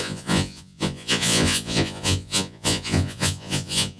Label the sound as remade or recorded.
remade